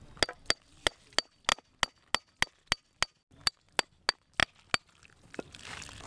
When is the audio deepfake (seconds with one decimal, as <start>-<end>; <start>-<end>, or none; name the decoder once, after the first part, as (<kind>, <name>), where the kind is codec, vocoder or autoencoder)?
none